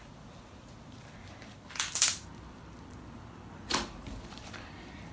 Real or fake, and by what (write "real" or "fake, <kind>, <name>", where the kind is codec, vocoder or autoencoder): fake, vocoder, BigVGAN v2